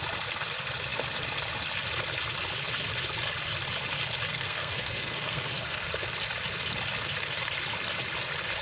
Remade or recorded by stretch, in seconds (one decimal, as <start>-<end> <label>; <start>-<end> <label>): 0.0-4.3 recorded; 4.3-5.8 remade; 5.8-8.6 recorded